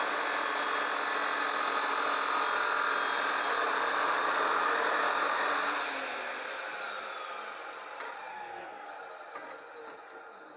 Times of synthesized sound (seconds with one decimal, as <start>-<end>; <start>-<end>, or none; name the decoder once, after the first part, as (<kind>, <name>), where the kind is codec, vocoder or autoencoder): 8.3-8.9 (codec, SNAC)